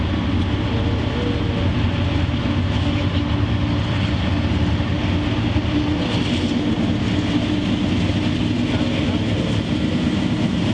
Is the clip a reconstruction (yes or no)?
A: no